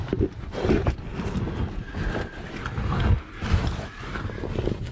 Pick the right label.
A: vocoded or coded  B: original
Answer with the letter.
B